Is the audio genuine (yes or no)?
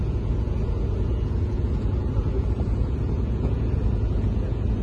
no